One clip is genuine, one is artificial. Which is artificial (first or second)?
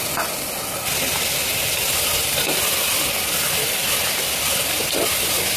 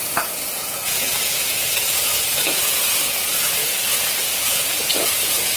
second